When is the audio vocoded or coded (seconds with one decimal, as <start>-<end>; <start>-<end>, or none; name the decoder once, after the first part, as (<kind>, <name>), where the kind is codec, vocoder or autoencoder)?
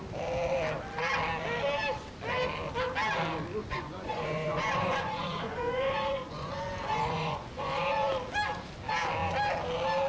3.6-8.1 (vocoder, Vocos)